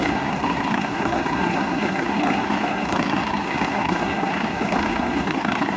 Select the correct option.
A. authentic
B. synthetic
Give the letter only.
B